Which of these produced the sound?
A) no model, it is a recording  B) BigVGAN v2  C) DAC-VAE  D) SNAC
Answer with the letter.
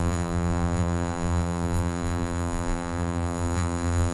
B